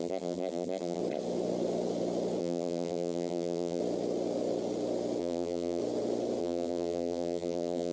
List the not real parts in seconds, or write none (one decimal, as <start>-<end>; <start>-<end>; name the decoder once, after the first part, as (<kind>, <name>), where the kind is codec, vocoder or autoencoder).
0.0-1.0 (vocoder, BigVGAN v2); 2.4-3.8; 5.2-5.8; 6.4-7.9